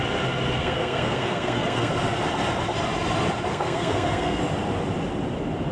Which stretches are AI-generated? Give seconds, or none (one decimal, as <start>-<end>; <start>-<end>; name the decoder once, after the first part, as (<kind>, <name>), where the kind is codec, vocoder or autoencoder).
0.6-1.9 (codec, SNAC); 3.5-4.4